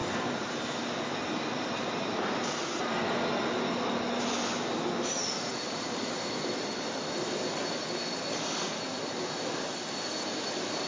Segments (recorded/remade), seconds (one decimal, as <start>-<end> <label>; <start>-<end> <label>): 0.0-2.9 remade; 2.9-5.2 recorded; 5.2-6.5 remade; 6.5-10.9 recorded